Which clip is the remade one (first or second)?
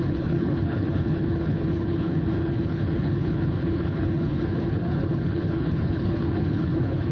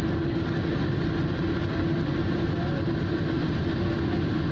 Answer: first